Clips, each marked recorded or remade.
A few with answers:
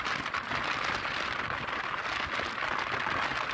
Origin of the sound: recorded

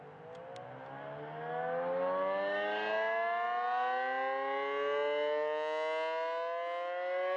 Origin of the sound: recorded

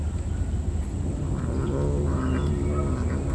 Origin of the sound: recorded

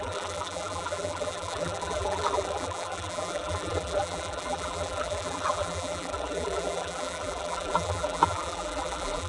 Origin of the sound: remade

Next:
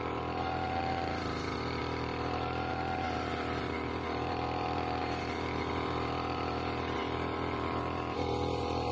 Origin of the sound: remade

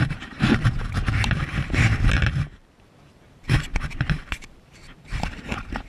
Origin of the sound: remade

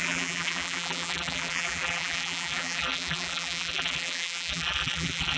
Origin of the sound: remade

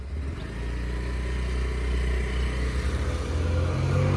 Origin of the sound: recorded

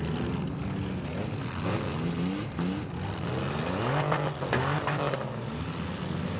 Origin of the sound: recorded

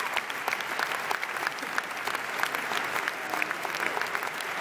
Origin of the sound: recorded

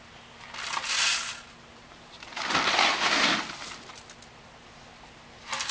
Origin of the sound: recorded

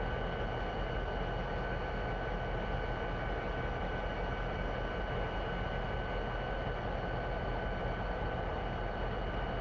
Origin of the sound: recorded